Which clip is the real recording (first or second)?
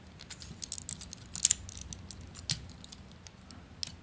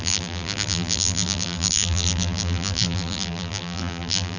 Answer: first